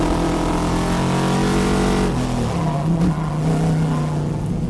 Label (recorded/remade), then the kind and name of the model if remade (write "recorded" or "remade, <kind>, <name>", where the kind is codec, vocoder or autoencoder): recorded